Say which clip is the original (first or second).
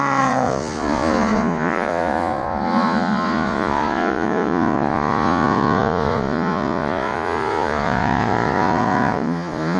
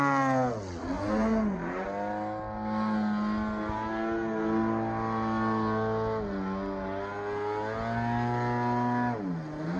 second